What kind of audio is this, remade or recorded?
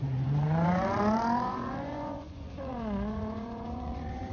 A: remade